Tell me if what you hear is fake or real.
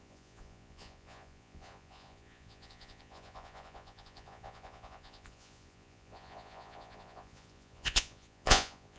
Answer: fake